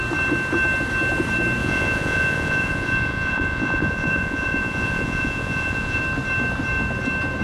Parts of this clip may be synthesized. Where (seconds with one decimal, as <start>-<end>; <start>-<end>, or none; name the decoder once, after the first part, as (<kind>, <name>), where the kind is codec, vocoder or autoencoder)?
1.6-6.0 (vocoder, Vocos)